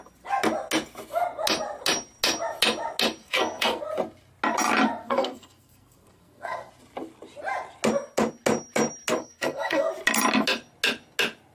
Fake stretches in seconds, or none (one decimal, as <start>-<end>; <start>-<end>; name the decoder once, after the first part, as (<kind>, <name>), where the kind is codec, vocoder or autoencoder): 3.2-3.8 (codec, SNAC); 5.0-6.7; 9.2-9.9